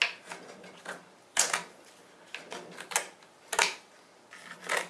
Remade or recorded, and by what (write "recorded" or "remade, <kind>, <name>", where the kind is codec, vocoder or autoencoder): recorded